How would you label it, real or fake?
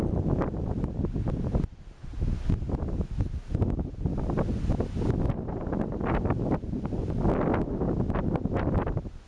real